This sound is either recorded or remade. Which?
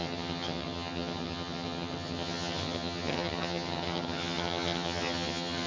remade